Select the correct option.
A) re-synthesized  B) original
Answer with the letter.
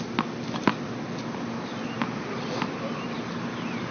B